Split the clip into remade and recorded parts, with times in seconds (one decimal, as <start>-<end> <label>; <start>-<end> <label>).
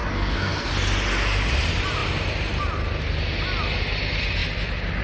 0.0-0.7 remade; 0.7-5.0 recorded